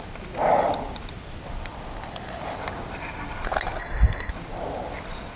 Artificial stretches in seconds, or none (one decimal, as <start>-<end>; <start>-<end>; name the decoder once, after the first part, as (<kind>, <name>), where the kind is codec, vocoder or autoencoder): 3.8-4.3 (codec, SNAC)

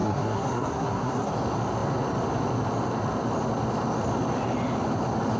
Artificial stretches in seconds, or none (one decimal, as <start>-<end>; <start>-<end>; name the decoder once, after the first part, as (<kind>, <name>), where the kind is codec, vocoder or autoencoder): 0.0-1.3 (codec, SNAC)

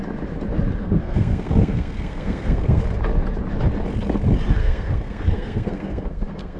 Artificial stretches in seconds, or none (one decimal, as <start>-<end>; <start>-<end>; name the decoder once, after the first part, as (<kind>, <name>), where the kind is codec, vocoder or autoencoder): 0.8-2.8 (codec, SNAC); 4.6-6.6

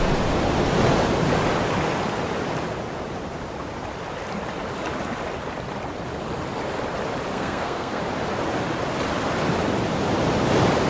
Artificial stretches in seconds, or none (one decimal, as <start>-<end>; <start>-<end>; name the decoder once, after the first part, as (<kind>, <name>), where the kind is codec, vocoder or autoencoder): 7.3-8.0 (codec, SNAC)

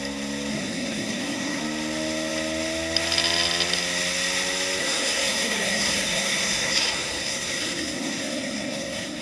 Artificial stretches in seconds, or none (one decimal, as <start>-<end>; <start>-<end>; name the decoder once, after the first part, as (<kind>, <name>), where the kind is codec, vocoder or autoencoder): 0.5-1.6 (codec, SNAC); 4.8-9.2